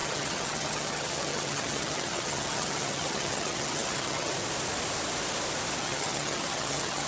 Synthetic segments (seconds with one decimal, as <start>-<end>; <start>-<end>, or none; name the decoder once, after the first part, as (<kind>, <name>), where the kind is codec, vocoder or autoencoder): 0.0-4.3 (vocoder, HiFi-GAN); 5.8-7.1